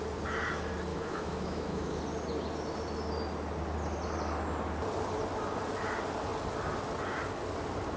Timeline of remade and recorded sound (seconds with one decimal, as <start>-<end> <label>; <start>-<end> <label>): 0.0-0.9 recorded; 0.9-2.0 remade; 2.0-8.0 recorded